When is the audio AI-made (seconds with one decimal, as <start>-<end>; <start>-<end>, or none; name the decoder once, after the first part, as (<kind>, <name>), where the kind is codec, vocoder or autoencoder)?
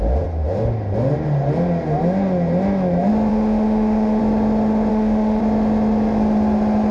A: 3.3-4.2 (autoencoder, DAC-VAE); 4.9-5.4